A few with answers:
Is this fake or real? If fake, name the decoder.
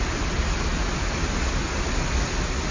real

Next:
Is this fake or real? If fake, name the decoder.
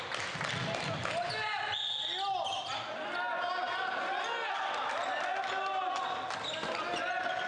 real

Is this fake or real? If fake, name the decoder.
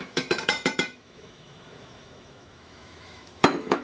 fake, autoencoder, DAC-VAE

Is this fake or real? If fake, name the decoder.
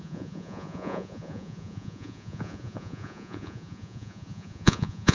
fake, vocoder, Vocos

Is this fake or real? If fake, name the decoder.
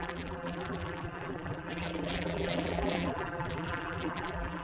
fake, vocoder, BigVGAN v2